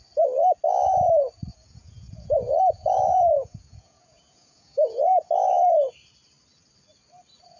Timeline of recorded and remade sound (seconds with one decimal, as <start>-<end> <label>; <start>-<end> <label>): 0.0-1.5 recorded; 1.5-5.3 remade; 5.3-7.6 recorded